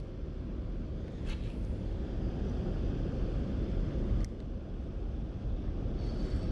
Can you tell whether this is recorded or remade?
recorded